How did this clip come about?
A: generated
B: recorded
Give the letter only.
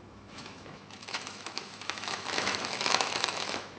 A